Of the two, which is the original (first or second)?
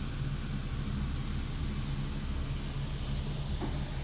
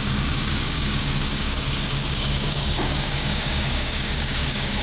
first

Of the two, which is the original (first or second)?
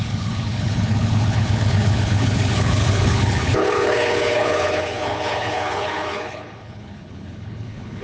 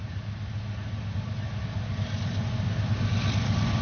second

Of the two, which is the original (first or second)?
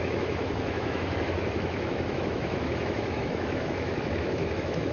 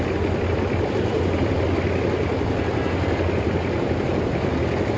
second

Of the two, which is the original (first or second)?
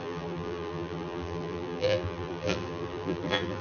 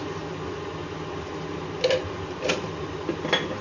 second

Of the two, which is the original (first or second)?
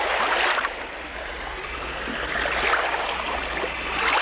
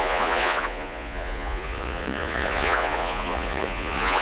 first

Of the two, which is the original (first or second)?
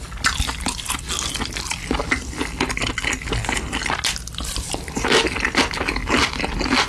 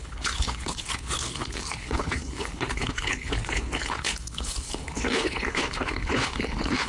first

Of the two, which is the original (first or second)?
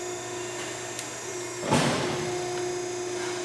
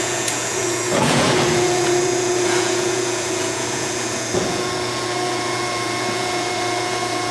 first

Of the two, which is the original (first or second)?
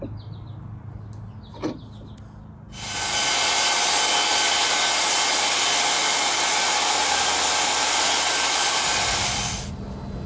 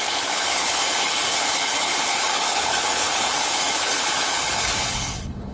first